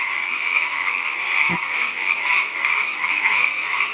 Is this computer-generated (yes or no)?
yes